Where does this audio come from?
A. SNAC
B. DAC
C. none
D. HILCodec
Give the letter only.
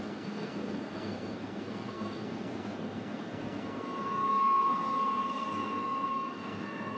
A